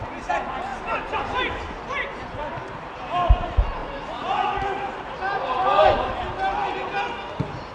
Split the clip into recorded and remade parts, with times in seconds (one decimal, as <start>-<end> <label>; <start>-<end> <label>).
0.0-7.7 recorded